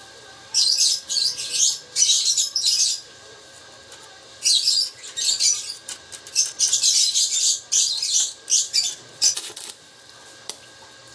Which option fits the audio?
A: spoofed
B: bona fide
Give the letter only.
A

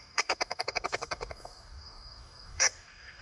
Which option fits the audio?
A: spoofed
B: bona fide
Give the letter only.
A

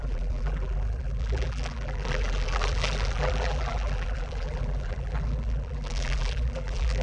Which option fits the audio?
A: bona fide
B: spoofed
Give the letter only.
B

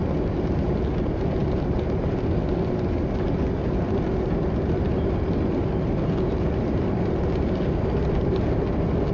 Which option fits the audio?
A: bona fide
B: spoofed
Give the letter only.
A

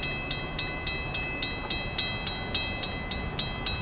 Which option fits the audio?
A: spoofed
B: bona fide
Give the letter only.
B